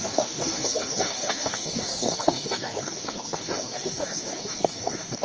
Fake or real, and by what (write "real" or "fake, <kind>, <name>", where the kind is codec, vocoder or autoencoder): fake, codec, DAC